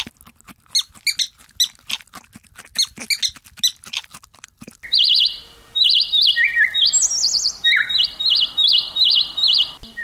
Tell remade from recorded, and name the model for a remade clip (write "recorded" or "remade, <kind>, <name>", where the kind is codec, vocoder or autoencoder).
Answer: recorded